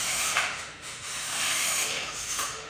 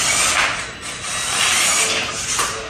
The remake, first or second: first